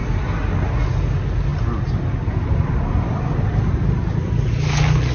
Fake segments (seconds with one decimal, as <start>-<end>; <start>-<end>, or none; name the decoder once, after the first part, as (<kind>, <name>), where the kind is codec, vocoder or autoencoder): none